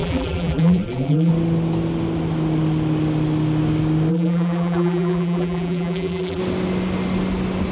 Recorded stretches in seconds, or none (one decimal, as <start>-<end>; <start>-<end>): 1.3-4.1; 6.4-7.7